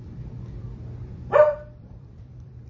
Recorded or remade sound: remade